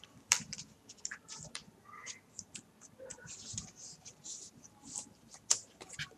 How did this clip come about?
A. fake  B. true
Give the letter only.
A